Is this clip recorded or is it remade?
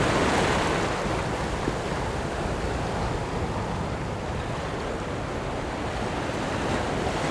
recorded